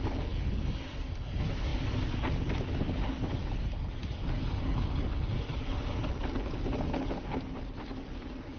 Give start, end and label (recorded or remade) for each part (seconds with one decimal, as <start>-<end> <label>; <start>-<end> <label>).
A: 0.0-8.6 recorded